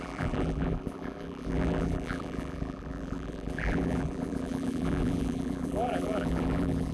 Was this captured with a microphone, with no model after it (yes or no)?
no